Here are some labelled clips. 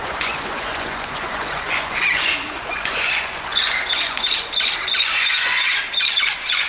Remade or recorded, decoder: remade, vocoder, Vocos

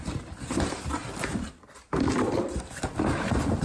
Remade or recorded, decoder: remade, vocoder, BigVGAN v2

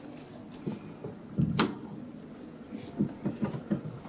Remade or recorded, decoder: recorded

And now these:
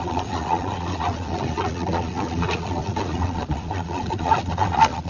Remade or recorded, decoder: remade, vocoder, Vocos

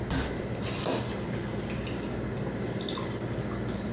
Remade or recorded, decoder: recorded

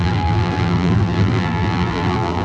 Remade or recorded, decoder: remade, vocoder, BigVGAN v2